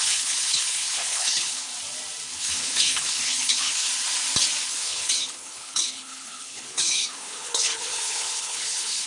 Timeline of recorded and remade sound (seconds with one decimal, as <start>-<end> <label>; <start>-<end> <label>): 0.0-1.7 remade; 1.7-2.3 recorded; 2.3-3.9 remade; 3.9-4.7 recorded; 4.7-9.1 remade